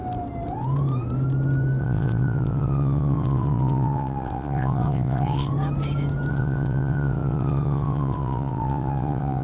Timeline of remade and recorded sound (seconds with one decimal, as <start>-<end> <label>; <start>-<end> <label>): 0.0-1.8 recorded; 1.8-5.5 remade; 5.5-6.3 recorded; 6.3-9.4 remade